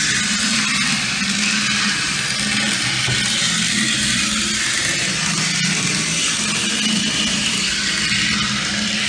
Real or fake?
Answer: real